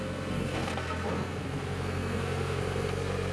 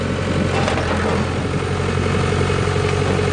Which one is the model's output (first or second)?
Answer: first